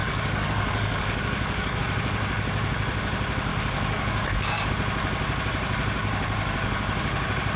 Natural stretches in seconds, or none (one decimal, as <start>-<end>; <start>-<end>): 1.8-3.5; 4.7-7.6